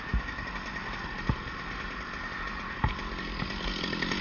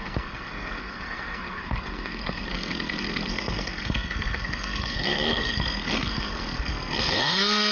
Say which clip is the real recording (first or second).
first